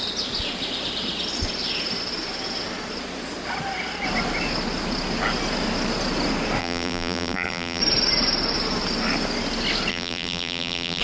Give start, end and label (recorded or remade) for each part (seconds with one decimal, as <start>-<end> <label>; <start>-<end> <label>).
0.0-6.6 recorded; 6.6-7.8 remade; 7.8-9.9 recorded; 9.9-11.0 remade